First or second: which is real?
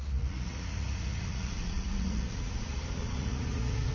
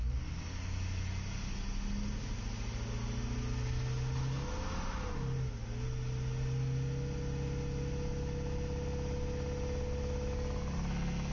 second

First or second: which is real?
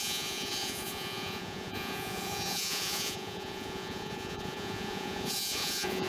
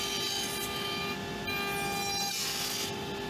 second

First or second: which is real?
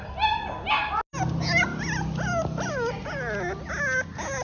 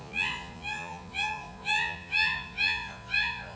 first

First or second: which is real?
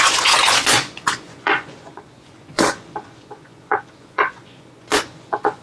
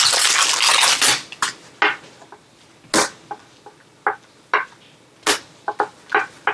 second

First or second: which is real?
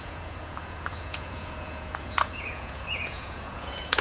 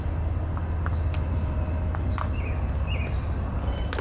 second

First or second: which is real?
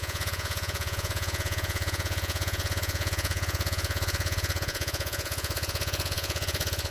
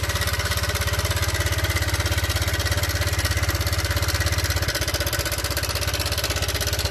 second